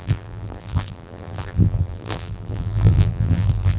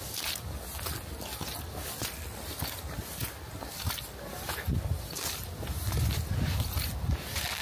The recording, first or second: second